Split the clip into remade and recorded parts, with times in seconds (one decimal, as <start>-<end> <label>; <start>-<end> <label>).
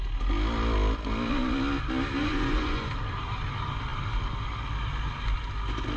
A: 0.0-2.2 recorded; 2.2-2.9 remade; 2.9-6.0 recorded